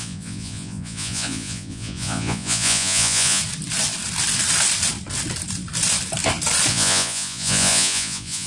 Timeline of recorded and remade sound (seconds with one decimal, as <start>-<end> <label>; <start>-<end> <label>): 0.0-3.4 remade; 3.4-6.7 recorded; 6.7-8.5 remade